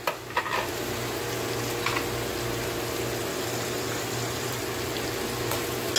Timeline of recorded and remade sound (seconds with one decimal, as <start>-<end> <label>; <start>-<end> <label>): 0.0-3.3 recorded; 3.3-4.6 remade; 4.6-6.0 recorded